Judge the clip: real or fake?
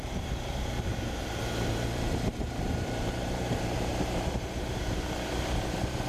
fake